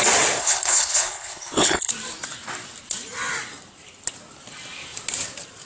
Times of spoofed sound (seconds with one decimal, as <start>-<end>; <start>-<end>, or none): 0.4-1.9